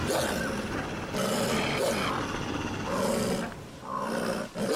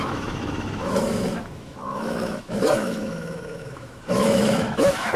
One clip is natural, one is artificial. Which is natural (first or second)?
first